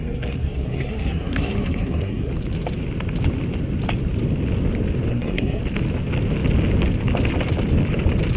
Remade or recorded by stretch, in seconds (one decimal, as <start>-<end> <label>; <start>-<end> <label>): 0.0-2.3 remade; 2.3-5.1 recorded; 5.1-5.6 remade; 5.6-8.4 recorded

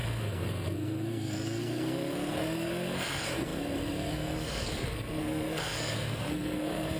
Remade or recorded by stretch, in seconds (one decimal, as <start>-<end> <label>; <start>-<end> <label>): 0.0-7.0 remade

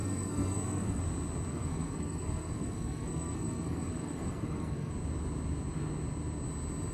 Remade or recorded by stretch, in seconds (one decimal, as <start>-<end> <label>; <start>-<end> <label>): 0.0-1.0 remade; 1.0-1.5 recorded; 1.5-4.9 remade; 4.9-6.9 recorded

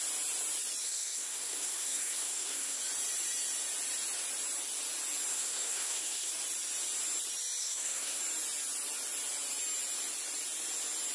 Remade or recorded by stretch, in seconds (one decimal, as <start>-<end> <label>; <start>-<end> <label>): 0.0-0.8 recorded; 0.8-2.8 remade; 2.8-5.3 recorded; 5.3-6.3 remade; 6.3-7.6 recorded; 7.6-8.2 remade; 8.2-11.1 recorded

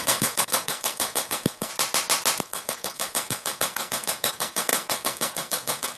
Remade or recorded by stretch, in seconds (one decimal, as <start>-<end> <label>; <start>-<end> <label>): 0.0-1.7 remade; 1.7-2.4 recorded; 2.4-6.0 remade